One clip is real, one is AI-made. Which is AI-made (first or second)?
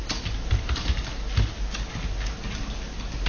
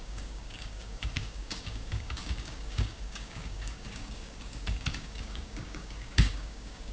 second